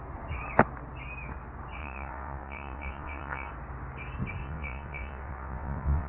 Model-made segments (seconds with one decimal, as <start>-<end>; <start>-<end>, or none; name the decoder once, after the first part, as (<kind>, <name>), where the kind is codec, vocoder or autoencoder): 1.8-3.5 (vocoder, WaveNeXt); 4.4-6.1